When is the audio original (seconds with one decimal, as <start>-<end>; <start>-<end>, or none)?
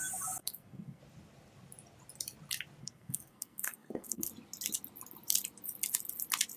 0.0-0.4; 1.0-2.8; 4.3-6.6